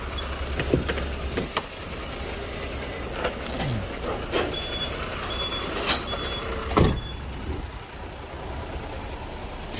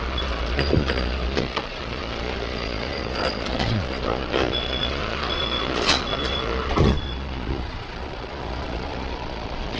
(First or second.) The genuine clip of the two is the first